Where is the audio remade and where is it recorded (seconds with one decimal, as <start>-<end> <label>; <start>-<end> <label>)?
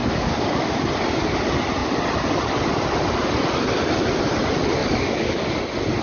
0.0-0.7 remade; 0.7-4.8 recorded; 4.8-5.5 remade; 5.5-6.0 recorded